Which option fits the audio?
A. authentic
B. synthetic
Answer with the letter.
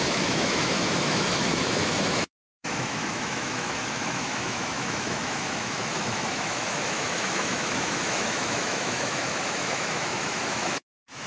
B